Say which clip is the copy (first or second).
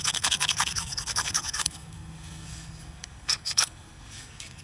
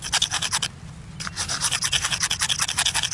first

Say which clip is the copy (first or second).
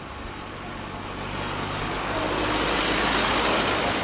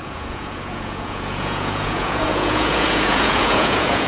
second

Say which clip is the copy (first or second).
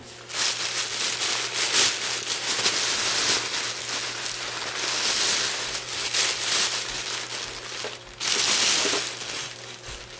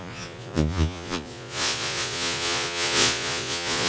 second